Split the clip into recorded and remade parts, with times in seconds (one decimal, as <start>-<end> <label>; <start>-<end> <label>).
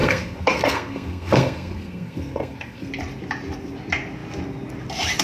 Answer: 0.0-2.9 remade; 2.9-5.2 recorded